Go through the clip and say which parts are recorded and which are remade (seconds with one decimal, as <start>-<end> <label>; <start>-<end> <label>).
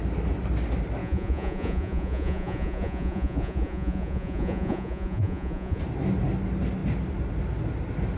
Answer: 0.0-1.0 recorded; 1.0-5.8 remade; 5.8-8.2 recorded